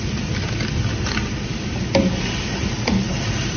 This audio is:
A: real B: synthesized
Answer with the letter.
B